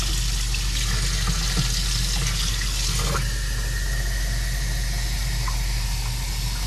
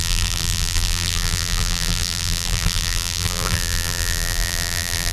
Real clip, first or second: first